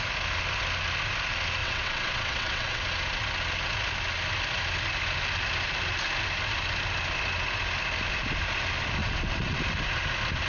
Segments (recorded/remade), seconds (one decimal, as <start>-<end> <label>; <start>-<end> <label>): 0.0-1.6 recorded; 1.6-2.8 remade; 2.8-9.0 recorded; 9.0-9.6 remade; 9.6-10.5 recorded